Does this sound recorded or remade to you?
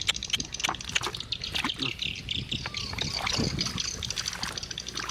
recorded